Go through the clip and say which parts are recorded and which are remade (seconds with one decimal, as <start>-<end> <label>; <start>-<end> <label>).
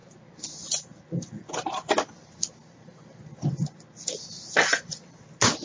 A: 0.0-5.6 recorded